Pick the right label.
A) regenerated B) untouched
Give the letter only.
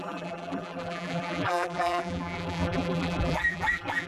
A